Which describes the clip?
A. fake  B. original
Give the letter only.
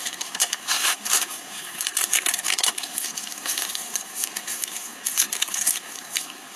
A